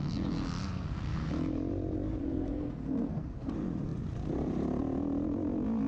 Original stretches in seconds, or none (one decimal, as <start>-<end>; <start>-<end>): 0.0-0.6; 1.3-2.2; 3.5-5.9